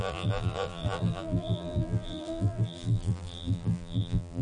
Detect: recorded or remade remade